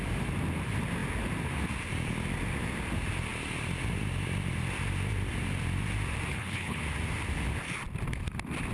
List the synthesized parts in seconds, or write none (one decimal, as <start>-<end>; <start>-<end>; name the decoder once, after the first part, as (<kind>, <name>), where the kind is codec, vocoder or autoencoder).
6.3-6.8 (codec, HILCodec)